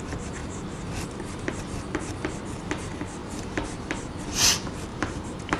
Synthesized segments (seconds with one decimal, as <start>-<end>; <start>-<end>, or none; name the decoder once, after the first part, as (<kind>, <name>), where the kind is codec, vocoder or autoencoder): 3.2-4.2 (vocoder, BigVGAN v2); 4.9-5.6